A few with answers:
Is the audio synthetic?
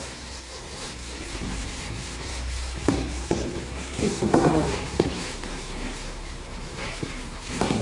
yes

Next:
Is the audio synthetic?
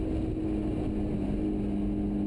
no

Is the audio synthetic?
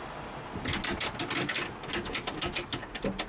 no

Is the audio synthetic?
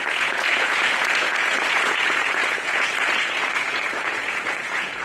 yes